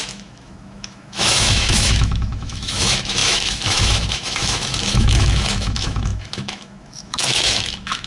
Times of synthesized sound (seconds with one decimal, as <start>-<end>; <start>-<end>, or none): 0.0-8.1